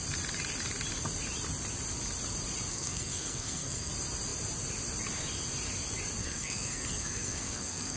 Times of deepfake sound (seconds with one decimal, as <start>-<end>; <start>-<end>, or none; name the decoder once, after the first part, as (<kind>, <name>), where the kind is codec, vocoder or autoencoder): 2.7-3.9 (codec, SNAC); 6.2-8.0